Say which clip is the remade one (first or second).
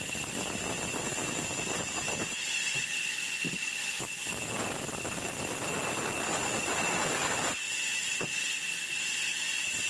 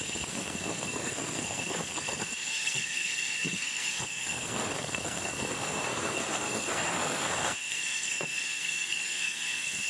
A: second